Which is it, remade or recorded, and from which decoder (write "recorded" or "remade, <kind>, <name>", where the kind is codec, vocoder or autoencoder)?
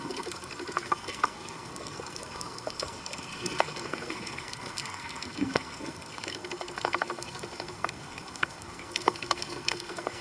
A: remade, codec, SNAC